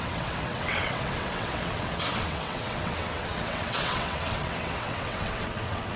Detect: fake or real fake